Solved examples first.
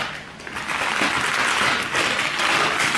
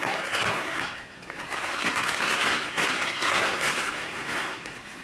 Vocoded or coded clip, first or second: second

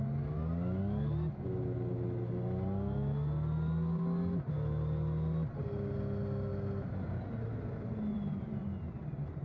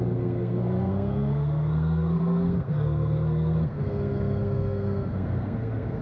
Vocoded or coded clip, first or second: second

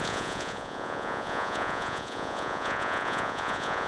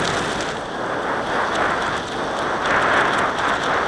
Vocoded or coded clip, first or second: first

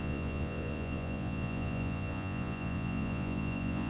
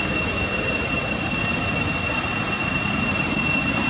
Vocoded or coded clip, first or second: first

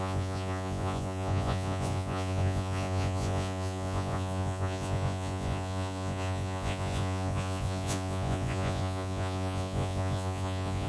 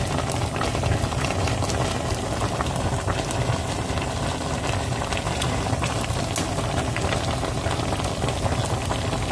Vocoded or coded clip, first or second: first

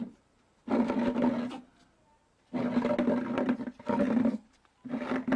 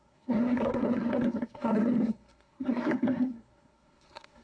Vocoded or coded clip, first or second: second